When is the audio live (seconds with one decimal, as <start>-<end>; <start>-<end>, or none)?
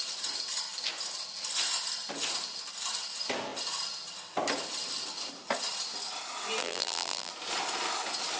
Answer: 0.0-6.6; 7.3-8.4